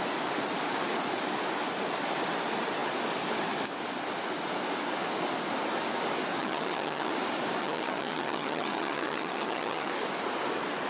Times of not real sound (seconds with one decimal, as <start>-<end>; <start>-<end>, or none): 6.4-7.1; 7.6-9.9